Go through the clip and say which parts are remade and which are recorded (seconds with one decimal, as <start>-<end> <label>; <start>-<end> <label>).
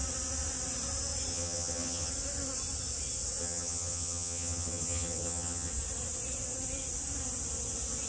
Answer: 0.0-1.3 recorded; 1.3-2.1 remade; 2.1-3.4 recorded; 3.4-5.7 remade; 5.7-8.1 recorded